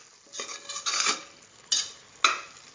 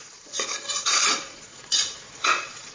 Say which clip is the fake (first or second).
second